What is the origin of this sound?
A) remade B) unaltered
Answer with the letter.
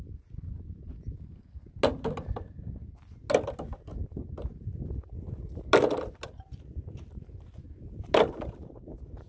B